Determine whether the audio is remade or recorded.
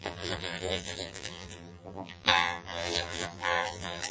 remade